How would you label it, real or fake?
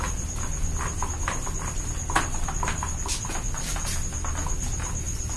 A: real